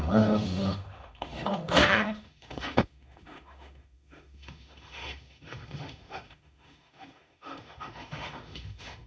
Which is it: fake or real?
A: fake